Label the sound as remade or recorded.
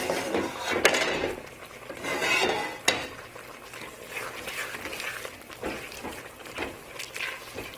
recorded